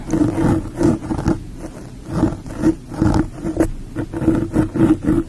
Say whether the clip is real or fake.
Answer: real